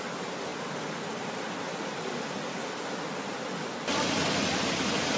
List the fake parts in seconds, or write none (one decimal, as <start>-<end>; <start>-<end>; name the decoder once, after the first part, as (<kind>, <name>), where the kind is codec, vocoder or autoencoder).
none